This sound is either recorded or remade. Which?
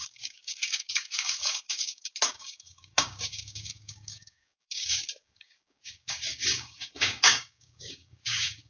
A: remade